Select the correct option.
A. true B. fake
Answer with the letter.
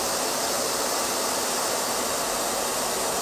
A